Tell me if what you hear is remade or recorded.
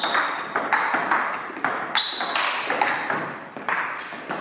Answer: recorded